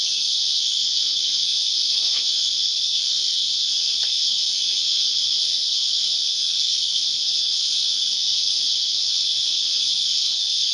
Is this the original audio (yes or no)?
no